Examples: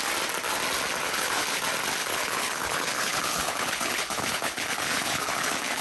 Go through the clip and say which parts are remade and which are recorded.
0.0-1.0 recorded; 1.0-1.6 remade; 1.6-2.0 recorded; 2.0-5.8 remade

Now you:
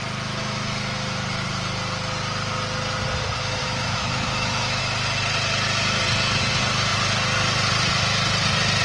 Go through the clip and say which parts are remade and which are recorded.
0.0-3.6 recorded; 3.6-4.8 remade; 4.8-8.8 recorded

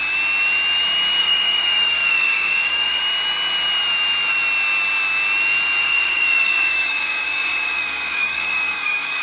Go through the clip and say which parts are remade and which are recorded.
0.0-1.2 recorded; 1.2-3.0 remade; 3.0-5.8 recorded; 5.8-9.2 remade

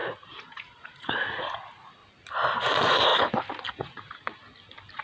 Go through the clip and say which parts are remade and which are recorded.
0.0-2.0 remade; 2.0-2.6 recorded; 2.6-3.1 remade; 3.1-3.7 recorded; 3.7-4.4 remade; 4.4-5.0 recorded